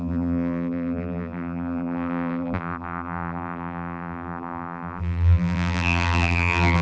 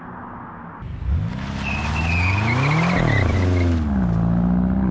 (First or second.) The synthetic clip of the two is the first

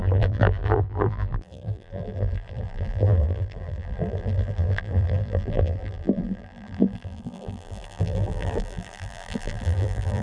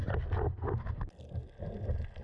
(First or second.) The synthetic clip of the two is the first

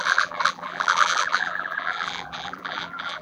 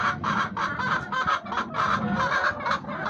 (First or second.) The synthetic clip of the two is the first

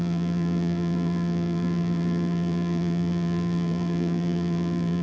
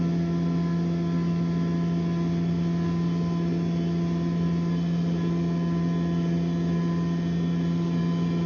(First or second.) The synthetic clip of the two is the first